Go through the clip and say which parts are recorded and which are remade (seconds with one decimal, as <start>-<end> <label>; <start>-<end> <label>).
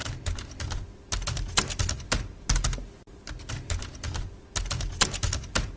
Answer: 0.0-5.8 recorded